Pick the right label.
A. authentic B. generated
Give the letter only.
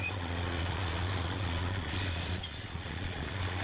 B